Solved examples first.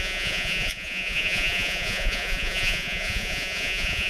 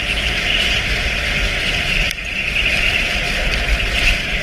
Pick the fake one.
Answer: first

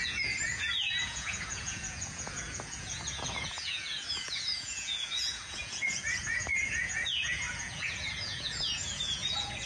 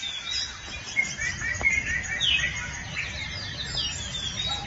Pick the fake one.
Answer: first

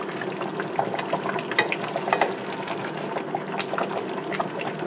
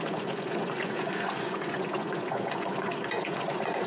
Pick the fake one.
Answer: second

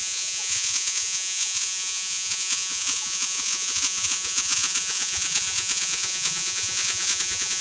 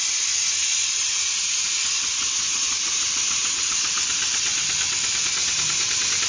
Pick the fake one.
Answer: first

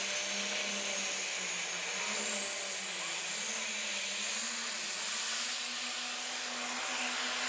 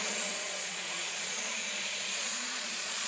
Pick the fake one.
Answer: second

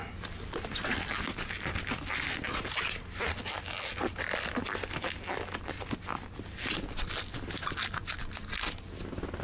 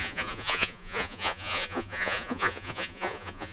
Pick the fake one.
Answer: second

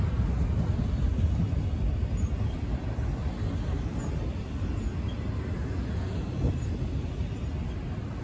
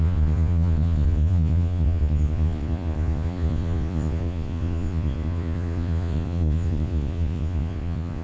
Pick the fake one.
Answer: second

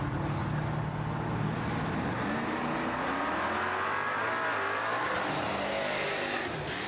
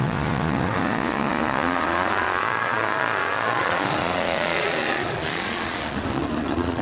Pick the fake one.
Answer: second